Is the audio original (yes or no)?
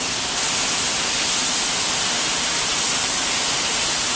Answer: yes